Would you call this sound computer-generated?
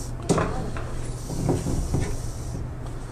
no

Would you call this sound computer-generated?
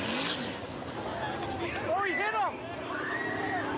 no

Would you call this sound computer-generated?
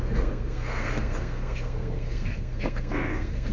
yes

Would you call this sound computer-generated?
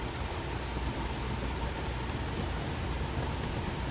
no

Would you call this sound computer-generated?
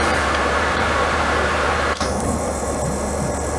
yes